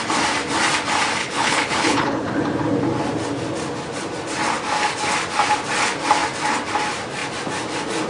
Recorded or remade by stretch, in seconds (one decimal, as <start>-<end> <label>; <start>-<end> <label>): 0.0-1.2 recorded; 1.2-2.3 remade; 2.3-8.1 recorded